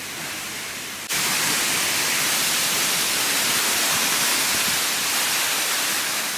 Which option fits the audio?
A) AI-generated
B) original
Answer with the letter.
A